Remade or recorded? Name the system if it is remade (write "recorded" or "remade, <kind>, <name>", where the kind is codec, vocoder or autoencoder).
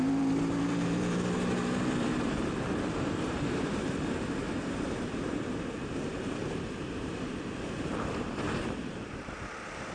remade, vocoder, BigVGAN v2